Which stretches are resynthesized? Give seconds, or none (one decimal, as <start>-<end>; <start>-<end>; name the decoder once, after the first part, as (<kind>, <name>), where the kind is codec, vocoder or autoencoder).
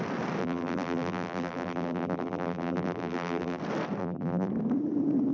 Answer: 0.4-3.6 (vocoder, BigVGAN v2); 4.0-4.5